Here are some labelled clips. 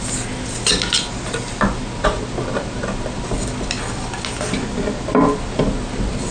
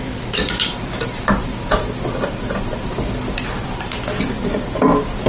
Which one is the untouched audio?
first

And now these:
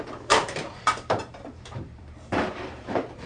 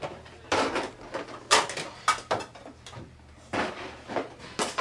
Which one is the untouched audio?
second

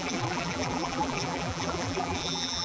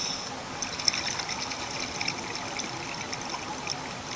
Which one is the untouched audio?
second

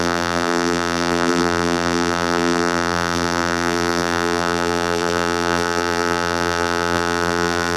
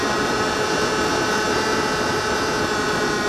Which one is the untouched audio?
second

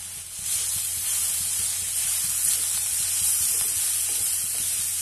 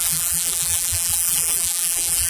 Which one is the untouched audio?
first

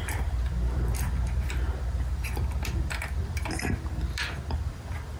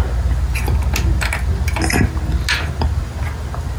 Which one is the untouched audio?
second